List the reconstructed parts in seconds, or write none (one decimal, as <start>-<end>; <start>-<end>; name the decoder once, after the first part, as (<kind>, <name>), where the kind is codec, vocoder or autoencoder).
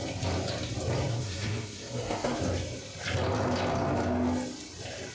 1.1-2.4 (codec, SNAC)